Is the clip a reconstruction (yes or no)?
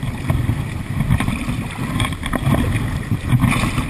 no